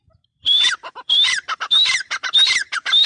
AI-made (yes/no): yes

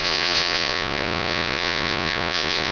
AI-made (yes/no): yes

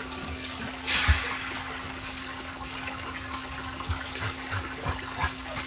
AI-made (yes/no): yes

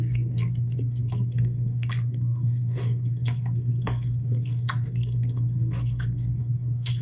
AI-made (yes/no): yes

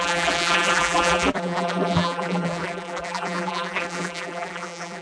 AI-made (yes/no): yes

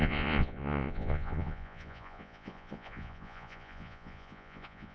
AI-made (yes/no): yes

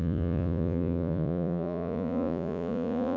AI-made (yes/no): yes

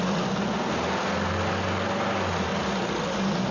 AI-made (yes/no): no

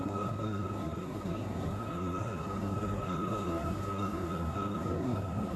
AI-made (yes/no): yes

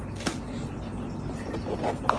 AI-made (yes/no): no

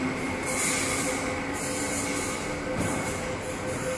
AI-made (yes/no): no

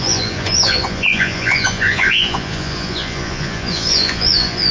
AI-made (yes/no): yes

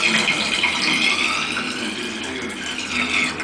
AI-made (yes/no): no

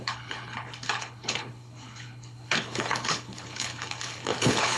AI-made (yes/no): yes